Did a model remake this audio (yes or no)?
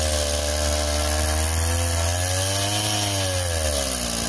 no